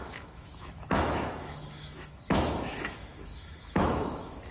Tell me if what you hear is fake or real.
fake